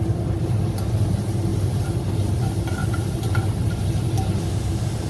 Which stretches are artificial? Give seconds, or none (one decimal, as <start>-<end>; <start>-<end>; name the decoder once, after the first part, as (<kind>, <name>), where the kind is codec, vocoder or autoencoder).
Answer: 2.8-3.5 (vocoder, BigVGAN v2)